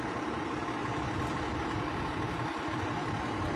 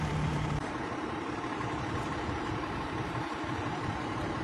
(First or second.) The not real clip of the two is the second